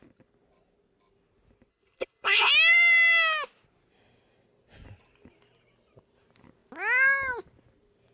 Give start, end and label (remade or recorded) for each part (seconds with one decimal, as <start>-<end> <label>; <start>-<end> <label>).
0.0-1.7 recorded; 1.7-2.5 remade; 2.5-8.1 recorded